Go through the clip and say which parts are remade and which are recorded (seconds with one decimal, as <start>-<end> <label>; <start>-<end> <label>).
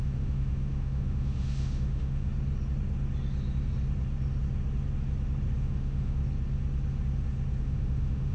0.0-2.3 remade; 2.3-5.6 recorded; 5.6-6.2 remade; 6.2-7.6 recorded; 7.6-8.3 remade